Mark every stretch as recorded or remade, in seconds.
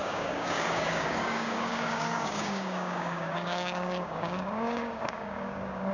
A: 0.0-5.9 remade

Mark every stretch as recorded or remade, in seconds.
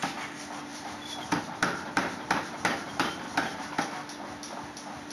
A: 0.0-0.7 recorded; 0.7-3.8 remade; 3.8-5.1 recorded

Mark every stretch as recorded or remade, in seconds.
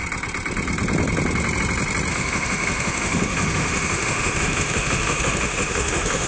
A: 0.0-2.1 recorded; 2.1-6.3 remade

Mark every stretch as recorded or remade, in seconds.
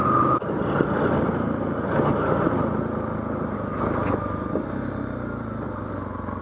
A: 0.0-6.4 recorded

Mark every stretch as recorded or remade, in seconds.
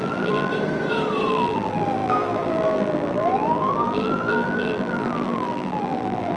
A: 0.0-0.5 remade; 0.5-1.3 recorded; 1.3-6.4 remade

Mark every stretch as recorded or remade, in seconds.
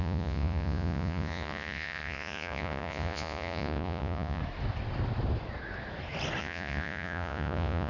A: 0.0-4.4 remade; 4.4-6.4 recorded; 6.4-7.9 remade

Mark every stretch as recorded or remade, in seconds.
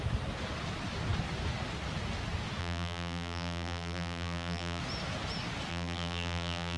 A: 0.0-2.6 recorded; 2.6-4.8 remade; 4.8-5.7 recorded; 5.7-6.8 remade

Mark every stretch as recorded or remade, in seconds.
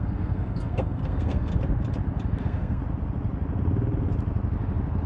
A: 0.0-1.5 remade; 1.5-2.4 recorded; 2.4-2.8 remade; 2.8-5.1 recorded